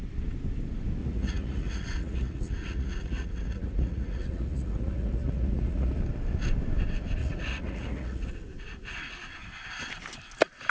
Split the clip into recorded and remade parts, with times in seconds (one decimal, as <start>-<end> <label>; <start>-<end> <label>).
0.0-1.0 recorded; 1.0-6.0 remade; 6.0-7.2 recorded; 7.2-8.3 remade; 8.3-10.7 recorded